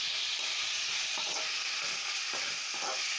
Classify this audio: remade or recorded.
recorded